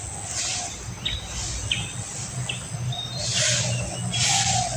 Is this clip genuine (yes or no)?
yes